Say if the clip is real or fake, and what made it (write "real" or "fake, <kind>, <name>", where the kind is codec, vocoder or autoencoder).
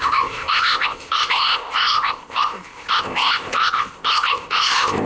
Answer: fake, codec, ZipCodec